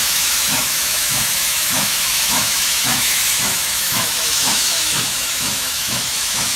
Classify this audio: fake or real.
fake